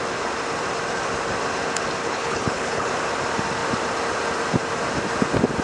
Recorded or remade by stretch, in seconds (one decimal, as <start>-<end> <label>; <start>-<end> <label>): 0.0-2.0 recorded; 2.0-2.9 remade; 2.9-5.6 recorded